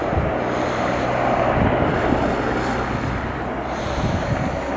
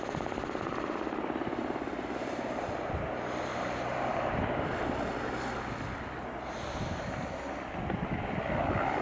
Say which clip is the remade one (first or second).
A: second